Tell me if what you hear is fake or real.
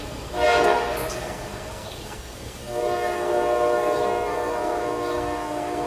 fake